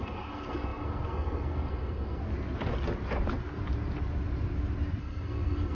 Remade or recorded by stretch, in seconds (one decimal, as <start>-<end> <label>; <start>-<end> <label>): 0.0-2.2 remade; 2.2-5.0 recorded; 5.0-5.7 remade